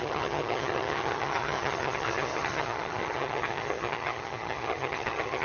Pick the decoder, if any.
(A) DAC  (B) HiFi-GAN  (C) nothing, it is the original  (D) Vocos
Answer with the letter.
B